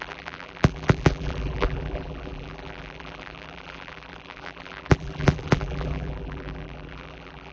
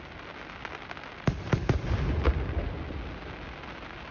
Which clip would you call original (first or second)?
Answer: second